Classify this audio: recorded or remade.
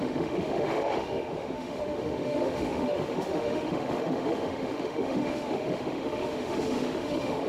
remade